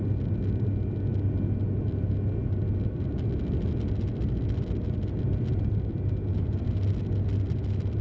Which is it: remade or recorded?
recorded